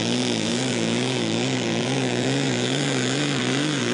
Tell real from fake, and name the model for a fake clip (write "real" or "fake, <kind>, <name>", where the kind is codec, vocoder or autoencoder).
fake, vocoder, BigVGAN v2